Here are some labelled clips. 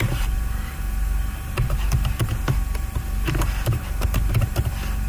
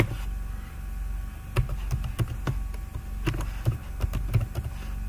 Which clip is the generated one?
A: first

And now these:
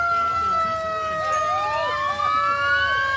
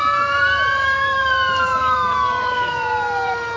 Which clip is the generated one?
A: second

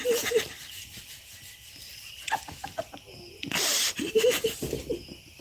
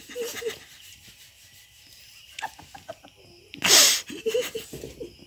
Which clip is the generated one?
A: first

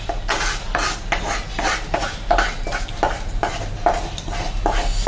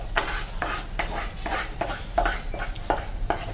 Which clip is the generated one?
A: second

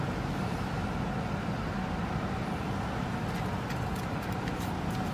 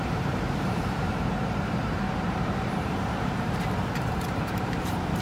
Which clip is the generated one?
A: second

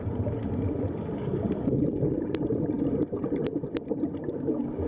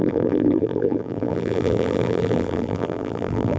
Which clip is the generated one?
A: second